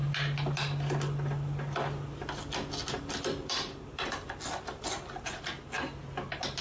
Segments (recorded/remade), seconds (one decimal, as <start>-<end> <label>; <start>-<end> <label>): 0.0-6.6 recorded